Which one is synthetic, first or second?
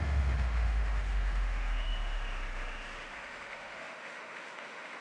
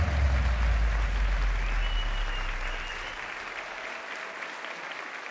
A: first